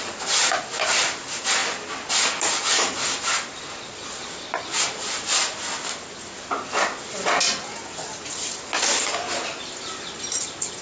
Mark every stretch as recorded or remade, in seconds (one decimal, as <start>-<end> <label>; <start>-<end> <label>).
0.0-10.8 recorded